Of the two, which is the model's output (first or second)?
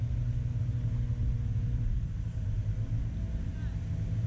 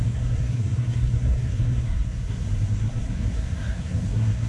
second